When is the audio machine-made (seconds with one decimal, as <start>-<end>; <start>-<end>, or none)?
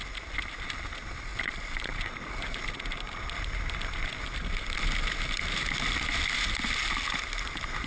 1.3-1.9